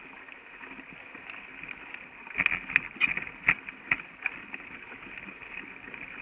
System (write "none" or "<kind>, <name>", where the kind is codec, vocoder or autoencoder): none